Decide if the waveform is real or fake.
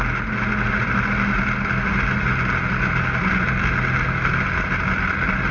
real